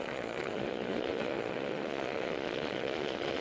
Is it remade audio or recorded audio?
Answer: remade